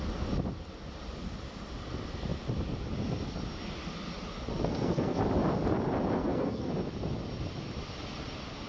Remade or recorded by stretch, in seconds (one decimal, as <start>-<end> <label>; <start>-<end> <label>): 0.0-4.5 recorded; 4.5-5.2 remade; 5.2-6.2 recorded; 6.2-6.7 remade; 6.7-8.7 recorded